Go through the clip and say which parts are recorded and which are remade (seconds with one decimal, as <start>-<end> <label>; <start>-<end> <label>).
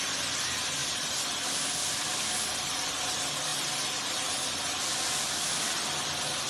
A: 0.0-0.8 recorded; 0.8-1.9 remade; 1.9-6.5 recorded